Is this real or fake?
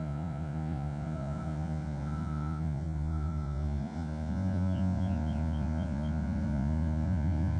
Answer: fake